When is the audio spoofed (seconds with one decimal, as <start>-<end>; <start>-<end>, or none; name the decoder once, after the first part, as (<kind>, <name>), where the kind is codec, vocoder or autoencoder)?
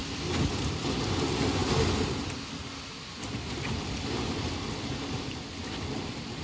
none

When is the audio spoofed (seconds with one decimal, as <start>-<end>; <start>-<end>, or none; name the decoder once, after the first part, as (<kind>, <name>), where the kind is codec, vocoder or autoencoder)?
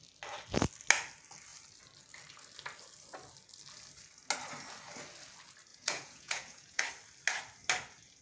5.7-6.8 (vocoder, Vocos)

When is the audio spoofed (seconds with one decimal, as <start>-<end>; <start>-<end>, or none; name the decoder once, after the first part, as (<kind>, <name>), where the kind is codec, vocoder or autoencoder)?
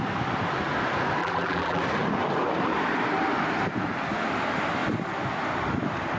1.2-1.8 (vocoder, BigVGAN v2)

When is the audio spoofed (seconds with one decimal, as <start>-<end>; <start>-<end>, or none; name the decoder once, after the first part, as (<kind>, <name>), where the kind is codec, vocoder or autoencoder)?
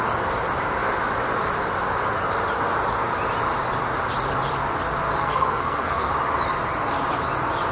5.2-6.1 (codec, SNAC)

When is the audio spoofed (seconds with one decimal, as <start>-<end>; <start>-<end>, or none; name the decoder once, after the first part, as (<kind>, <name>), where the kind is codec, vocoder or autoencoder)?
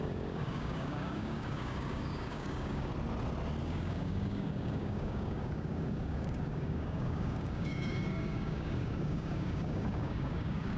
0.0-2.9 (codec, DAC); 3.6-10.8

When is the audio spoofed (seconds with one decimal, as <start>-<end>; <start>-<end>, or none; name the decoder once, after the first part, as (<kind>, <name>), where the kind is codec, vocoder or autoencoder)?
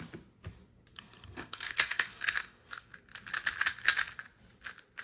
0.9-2.9 (codec, SNAC)